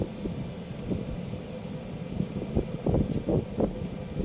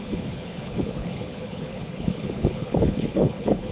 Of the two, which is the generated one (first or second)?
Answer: second